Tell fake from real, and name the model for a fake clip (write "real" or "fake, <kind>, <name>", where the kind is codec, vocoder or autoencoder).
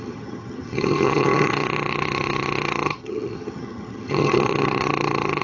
fake, vocoder, HiFi-GAN